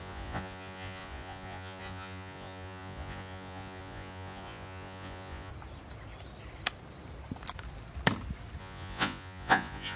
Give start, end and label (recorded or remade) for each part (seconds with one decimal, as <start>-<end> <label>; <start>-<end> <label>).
0.0-5.5 remade; 5.5-8.6 recorded; 8.6-10.0 remade